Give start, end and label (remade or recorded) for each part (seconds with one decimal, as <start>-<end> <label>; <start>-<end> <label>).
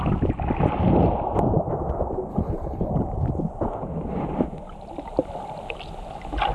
0.0-2.3 recorded; 2.3-2.9 remade; 2.9-6.5 recorded